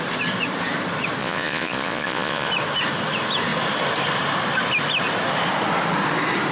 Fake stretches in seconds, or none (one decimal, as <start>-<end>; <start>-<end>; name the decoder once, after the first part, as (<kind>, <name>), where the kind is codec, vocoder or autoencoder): 1.2-2.5 (vocoder, Vocos)